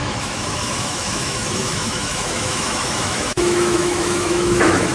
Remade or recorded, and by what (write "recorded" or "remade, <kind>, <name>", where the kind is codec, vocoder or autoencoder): remade, autoencoder, DAC-VAE